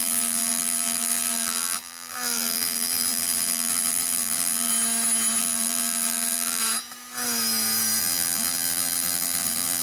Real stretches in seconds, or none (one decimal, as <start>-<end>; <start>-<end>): 4.7-5.4; 6.6-8.0